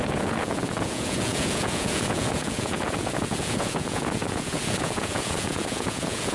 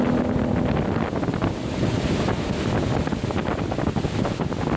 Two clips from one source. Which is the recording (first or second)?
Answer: second